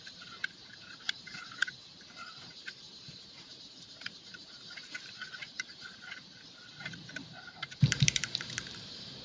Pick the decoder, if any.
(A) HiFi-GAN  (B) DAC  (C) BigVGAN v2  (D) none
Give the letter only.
C